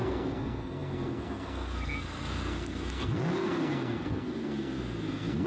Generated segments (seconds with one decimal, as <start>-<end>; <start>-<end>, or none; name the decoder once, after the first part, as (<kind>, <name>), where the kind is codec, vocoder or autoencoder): 0.0-5.5 (codec, SNAC)